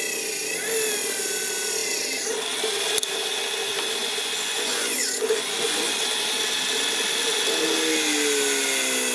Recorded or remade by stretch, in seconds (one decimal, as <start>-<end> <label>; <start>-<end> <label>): 0.0-4.0 recorded; 4.0-6.0 remade; 6.0-9.1 recorded